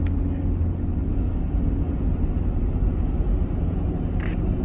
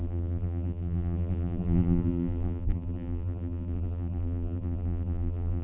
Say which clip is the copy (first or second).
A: second